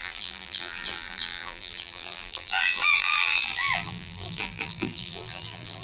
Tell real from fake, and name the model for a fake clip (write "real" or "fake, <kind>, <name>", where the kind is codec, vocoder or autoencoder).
fake, vocoder, BigVGAN v2